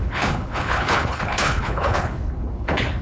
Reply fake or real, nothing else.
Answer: fake